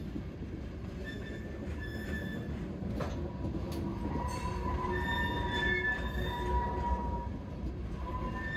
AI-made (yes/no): no